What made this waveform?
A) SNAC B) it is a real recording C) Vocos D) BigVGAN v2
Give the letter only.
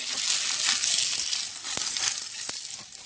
B